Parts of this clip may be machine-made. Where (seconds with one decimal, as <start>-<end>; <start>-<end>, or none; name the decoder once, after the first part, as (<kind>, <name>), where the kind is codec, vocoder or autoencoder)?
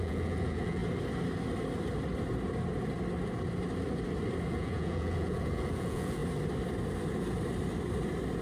0.0-0.8 (vocoder, Vocos); 4.5-6.2